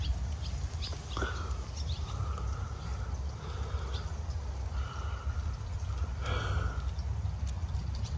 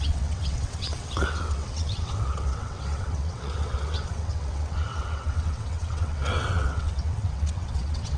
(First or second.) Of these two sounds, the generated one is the second